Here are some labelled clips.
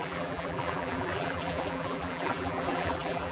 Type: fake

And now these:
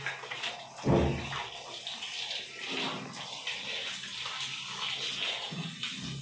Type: real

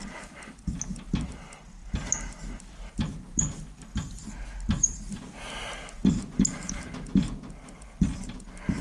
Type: real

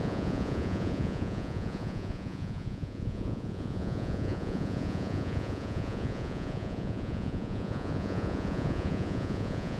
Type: fake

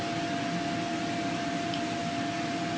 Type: real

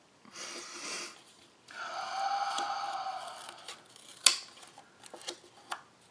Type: real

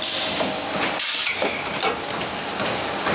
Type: real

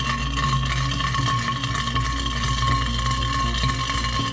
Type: real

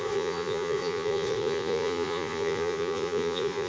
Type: fake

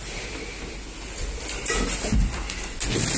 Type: real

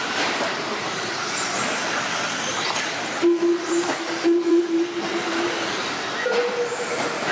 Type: fake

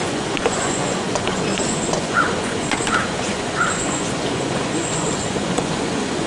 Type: fake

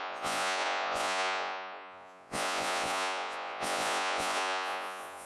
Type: fake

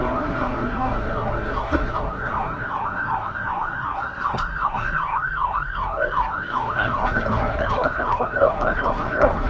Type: fake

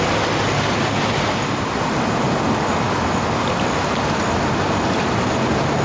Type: real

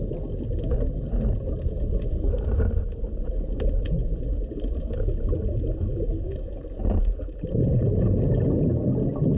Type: real